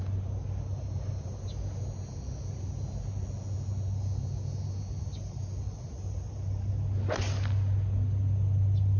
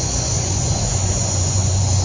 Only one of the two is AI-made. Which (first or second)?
second